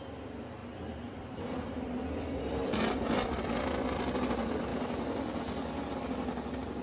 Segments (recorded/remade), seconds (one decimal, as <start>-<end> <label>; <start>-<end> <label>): 0.0-6.8 recorded